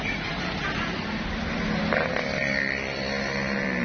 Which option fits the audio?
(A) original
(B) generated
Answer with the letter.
A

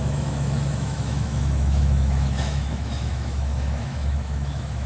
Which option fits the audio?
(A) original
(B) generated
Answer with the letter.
B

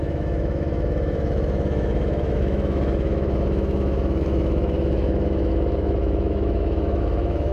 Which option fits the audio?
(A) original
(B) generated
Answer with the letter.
B